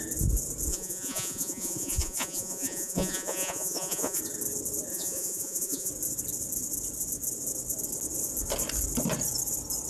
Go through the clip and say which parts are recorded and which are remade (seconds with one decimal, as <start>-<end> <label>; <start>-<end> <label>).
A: 0.0-0.7 recorded; 0.7-4.2 remade; 4.2-4.9 recorded; 4.9-5.9 remade; 5.9-9.9 recorded